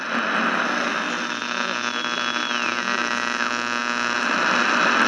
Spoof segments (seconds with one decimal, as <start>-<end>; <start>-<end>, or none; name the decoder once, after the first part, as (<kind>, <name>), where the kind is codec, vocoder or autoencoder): none